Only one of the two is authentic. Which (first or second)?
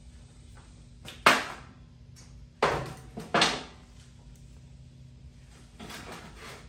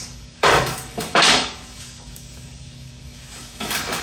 first